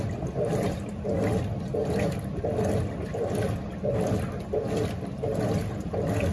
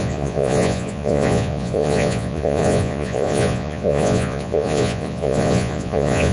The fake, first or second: second